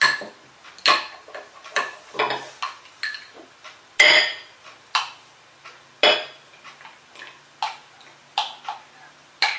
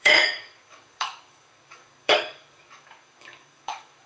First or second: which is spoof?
second